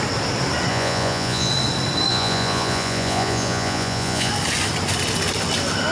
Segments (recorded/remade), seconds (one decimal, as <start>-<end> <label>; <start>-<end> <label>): 0.0-0.7 recorded; 0.7-1.5 remade; 1.5-2.1 recorded; 2.1-4.3 remade; 4.3-5.9 recorded